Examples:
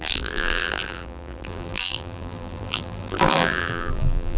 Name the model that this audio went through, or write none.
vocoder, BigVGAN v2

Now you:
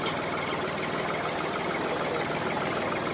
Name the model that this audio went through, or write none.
vocoder, BigVGAN v2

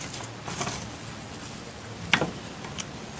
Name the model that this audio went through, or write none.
none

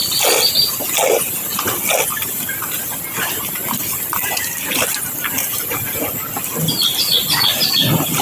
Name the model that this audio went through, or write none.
none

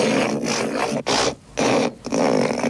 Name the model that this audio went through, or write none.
none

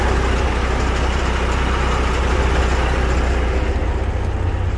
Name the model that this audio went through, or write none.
none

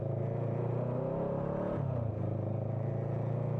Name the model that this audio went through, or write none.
none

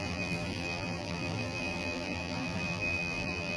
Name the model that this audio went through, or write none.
vocoder, BigVGAN v2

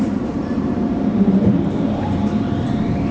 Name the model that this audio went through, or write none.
vocoder, BigVGAN v2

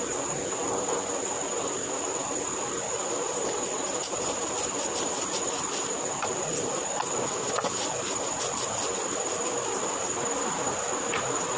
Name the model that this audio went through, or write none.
none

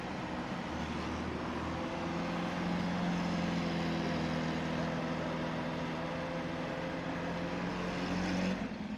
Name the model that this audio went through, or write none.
none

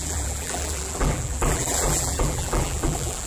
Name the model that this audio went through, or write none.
vocoder, BigVGAN v2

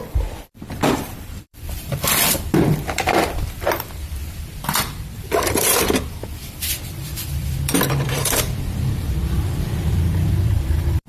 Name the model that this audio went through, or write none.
vocoder, BigVGAN v2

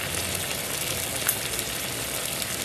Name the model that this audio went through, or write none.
none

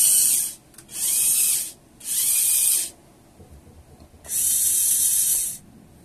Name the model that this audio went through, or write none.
none